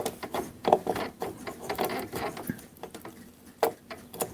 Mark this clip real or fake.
real